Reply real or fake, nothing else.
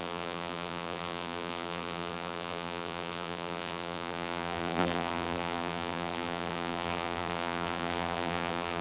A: fake